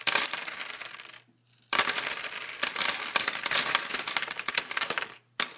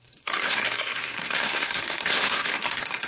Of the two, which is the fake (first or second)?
second